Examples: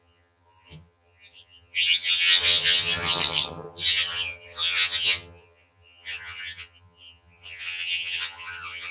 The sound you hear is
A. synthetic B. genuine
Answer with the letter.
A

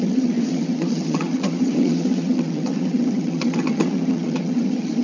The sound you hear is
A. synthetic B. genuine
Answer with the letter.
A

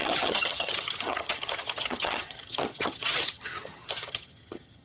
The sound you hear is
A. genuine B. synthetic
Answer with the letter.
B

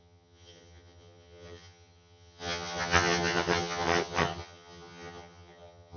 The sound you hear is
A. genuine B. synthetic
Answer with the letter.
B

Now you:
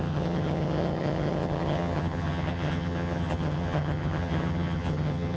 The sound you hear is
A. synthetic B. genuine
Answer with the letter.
A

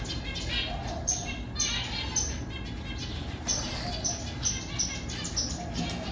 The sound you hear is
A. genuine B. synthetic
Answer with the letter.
A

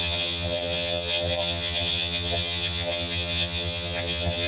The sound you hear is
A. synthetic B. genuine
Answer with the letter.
A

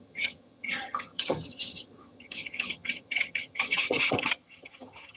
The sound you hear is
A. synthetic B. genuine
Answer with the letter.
A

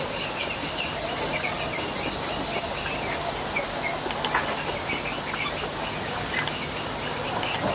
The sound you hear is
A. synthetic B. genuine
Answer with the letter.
B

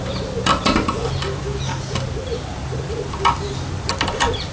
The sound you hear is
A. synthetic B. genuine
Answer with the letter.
B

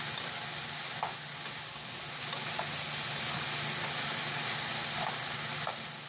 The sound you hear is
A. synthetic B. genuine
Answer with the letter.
B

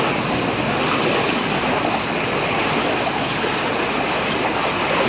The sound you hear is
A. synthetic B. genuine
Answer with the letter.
B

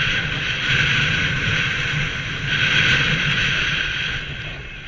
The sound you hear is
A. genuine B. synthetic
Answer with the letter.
A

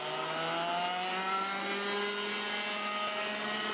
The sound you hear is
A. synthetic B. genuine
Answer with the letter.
B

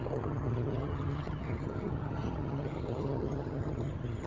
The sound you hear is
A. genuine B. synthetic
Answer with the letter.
B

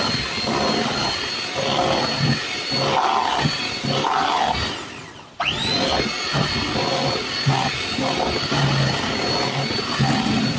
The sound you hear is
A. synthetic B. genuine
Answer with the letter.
B